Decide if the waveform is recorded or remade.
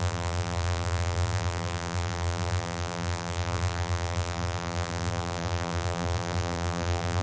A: remade